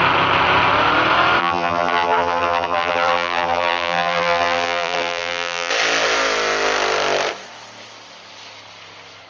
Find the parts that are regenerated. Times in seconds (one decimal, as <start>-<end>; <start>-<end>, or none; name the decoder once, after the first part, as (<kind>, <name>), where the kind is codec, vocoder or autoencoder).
1.4-5.7 (vocoder, BigVGAN v2)